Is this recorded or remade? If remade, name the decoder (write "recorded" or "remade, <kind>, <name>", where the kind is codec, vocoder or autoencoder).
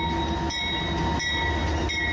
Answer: recorded